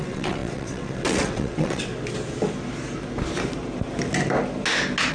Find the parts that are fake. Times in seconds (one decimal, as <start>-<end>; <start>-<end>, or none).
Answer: 0.0-1.9